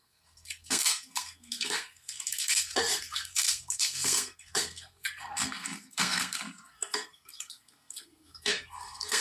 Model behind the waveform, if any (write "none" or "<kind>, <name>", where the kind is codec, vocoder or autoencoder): codec, SNAC